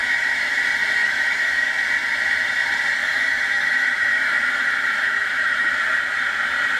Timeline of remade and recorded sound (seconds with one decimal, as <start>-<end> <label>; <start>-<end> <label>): 0.0-0.5 remade; 0.5-1.0 recorded; 1.0-1.7 remade; 1.7-3.0 recorded; 3.0-5.7 remade; 5.7-6.8 recorded